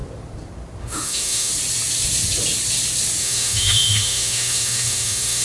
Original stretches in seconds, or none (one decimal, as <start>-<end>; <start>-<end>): 0.0-0.8; 1.5-3.2